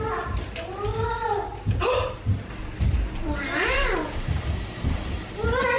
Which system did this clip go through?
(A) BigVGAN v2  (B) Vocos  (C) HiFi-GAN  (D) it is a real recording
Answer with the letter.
D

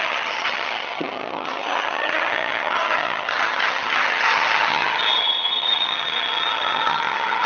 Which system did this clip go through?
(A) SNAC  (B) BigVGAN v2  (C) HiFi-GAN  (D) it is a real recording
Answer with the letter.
C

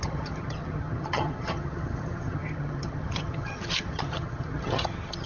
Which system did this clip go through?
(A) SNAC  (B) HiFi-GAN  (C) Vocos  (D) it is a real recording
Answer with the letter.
B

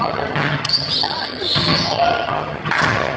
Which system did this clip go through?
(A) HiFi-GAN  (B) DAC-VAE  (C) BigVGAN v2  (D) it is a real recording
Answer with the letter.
A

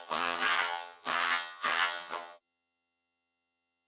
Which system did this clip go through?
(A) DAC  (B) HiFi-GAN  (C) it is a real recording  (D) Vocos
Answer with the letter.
B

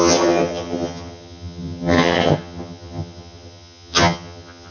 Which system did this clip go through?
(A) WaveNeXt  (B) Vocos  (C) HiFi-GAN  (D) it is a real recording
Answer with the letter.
C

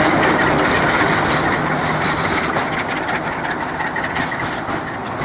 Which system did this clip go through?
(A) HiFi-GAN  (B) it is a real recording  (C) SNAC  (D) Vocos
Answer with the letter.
B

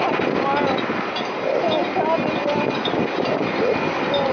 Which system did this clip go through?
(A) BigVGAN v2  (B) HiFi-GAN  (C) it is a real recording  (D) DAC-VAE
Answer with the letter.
C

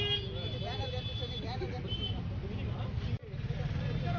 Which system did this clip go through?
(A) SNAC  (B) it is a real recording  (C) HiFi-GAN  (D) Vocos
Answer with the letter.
B